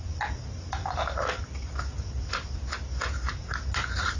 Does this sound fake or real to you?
real